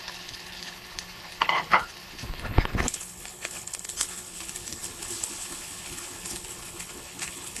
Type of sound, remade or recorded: remade